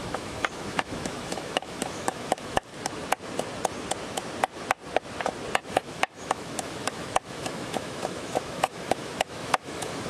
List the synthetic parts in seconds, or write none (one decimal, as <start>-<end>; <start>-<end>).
0.0-2.7; 5.6-10.1